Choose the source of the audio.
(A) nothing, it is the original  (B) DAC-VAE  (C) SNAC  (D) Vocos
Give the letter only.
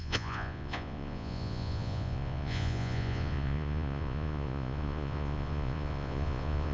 D